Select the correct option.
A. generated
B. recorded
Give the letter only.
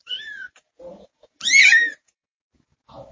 A